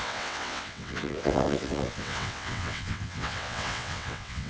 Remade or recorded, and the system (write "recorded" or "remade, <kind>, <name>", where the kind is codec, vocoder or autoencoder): remade, vocoder, WaveNeXt